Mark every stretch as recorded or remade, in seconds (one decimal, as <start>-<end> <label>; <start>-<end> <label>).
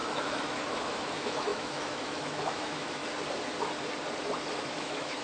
0.0-3.0 remade; 3.0-4.6 recorded; 4.6-5.2 remade